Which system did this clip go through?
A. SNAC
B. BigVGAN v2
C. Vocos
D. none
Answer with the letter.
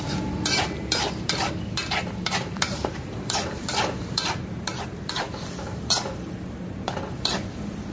B